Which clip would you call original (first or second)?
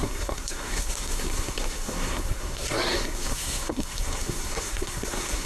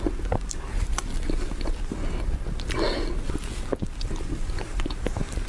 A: second